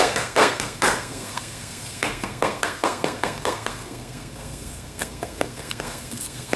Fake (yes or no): yes